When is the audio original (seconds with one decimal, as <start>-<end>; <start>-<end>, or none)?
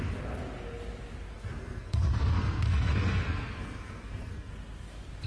0.0-1.3; 4.5-5.3